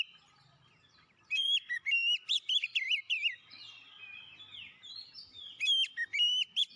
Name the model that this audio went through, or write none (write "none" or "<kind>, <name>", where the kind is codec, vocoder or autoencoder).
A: vocoder, BigVGAN v2